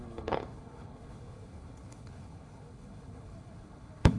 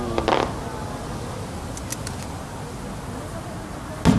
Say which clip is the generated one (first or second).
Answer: first